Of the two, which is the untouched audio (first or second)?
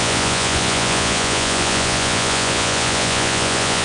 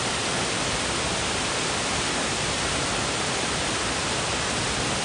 second